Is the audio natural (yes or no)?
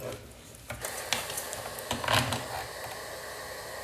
yes